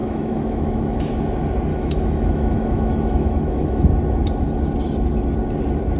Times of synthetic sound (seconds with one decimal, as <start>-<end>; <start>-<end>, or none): 0.0-1.1; 1.7-3.9